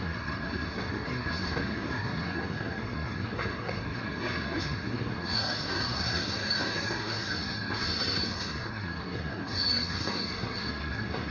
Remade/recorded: remade